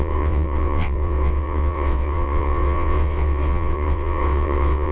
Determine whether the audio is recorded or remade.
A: remade